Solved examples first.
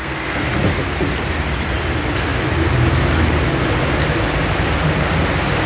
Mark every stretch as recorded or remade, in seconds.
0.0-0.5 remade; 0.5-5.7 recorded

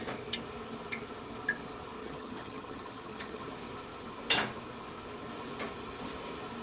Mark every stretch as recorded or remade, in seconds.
0.0-2.0 recorded; 2.0-3.5 remade; 3.5-6.6 recorded